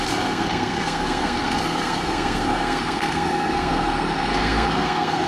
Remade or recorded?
remade